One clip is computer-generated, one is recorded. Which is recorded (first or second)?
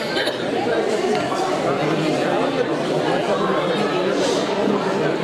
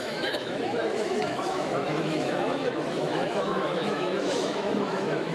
first